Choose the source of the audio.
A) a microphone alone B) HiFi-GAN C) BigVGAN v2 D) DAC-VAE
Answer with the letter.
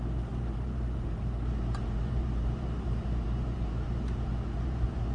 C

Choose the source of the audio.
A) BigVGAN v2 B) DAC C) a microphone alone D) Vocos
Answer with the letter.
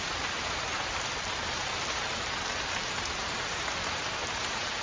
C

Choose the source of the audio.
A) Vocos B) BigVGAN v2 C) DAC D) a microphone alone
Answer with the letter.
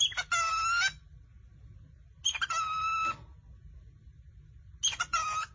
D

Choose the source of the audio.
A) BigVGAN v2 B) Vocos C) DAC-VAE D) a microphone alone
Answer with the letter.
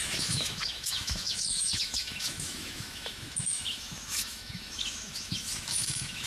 C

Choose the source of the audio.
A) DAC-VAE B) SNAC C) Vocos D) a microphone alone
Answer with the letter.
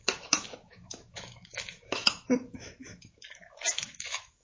A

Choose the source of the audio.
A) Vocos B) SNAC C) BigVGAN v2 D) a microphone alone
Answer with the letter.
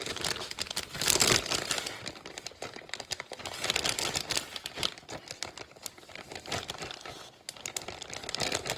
D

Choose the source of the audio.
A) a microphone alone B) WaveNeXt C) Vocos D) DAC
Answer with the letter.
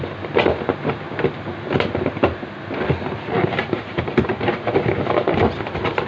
A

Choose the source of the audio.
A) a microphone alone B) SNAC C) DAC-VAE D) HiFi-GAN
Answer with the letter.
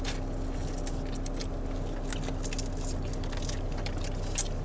A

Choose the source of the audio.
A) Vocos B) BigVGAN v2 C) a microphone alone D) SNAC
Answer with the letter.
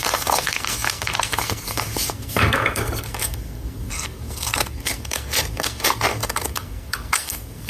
D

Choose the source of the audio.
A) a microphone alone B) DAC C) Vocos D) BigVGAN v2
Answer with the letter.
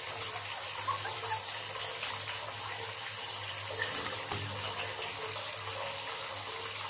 A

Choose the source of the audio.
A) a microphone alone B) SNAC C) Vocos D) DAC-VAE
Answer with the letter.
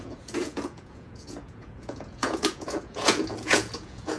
C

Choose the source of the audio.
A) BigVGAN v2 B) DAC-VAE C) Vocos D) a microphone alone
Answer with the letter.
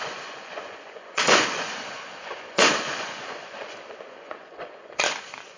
C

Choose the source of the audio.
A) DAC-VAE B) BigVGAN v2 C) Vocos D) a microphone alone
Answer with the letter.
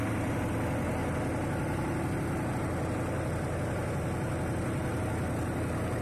D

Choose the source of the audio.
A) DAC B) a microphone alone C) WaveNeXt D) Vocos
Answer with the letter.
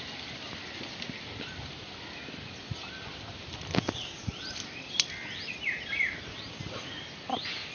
B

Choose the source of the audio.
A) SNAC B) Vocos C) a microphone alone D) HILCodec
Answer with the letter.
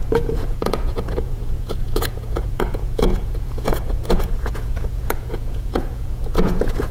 B